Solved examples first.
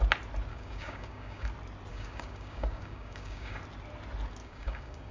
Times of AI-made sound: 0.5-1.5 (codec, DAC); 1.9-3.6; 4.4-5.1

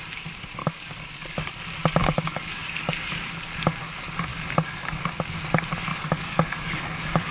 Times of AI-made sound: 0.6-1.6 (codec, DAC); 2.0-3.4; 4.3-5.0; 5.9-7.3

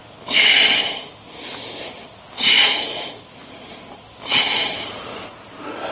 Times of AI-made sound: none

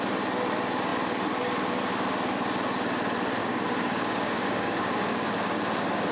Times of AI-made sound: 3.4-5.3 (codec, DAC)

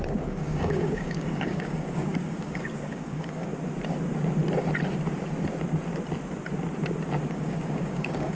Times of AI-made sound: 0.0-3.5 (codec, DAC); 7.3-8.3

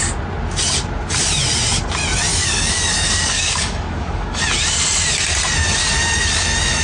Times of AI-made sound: 2.3-4.4 (codec, DAC)

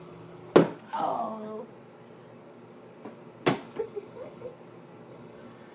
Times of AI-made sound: 0.0-0.4 (codec, DAC); 3.8-4.5; 5.1-5.7